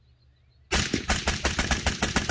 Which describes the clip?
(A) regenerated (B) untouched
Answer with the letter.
B